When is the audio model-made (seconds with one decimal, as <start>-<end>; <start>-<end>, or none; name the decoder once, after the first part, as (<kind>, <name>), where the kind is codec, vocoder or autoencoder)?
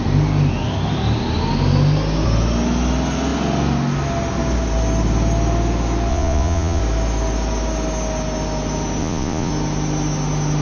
6.1-6.8 (vocoder, Vocos); 9.0-9.5